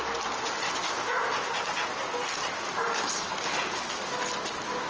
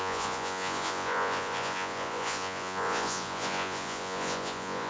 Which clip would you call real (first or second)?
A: first